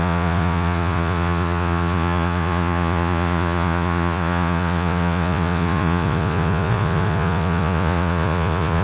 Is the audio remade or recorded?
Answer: remade